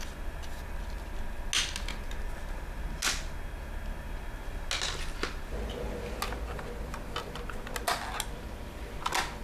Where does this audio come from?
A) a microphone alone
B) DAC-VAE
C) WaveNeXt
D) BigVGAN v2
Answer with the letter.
A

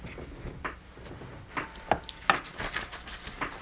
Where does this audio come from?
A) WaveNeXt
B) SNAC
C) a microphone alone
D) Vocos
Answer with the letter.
C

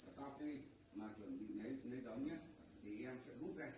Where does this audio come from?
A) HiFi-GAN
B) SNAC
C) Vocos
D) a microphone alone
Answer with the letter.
D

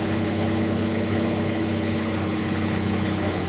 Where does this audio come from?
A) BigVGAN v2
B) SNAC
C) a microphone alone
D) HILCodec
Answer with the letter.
D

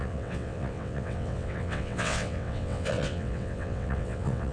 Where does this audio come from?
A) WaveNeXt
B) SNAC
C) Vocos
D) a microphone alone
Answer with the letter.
A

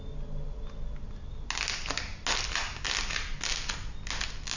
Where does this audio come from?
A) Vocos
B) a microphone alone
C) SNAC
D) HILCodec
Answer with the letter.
B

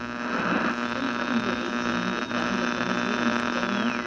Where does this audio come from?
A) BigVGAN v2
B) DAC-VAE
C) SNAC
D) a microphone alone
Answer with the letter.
D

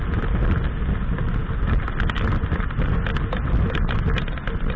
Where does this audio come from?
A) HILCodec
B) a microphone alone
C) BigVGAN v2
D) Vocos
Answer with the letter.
B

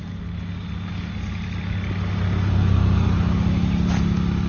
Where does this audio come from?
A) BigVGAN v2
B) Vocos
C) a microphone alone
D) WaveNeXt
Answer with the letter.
C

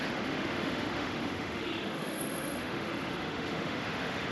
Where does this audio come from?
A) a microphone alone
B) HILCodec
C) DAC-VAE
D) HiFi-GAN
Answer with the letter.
C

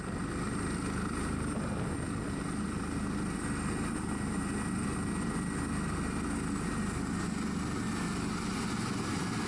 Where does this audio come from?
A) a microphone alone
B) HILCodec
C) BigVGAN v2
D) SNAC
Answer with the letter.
A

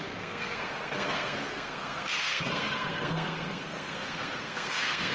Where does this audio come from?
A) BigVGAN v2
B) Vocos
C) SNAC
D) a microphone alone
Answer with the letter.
C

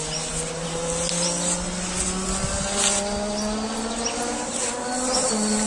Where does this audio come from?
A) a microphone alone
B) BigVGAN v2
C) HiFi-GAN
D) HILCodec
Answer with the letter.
A